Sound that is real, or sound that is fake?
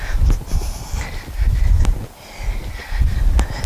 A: real